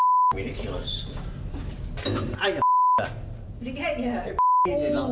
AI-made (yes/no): no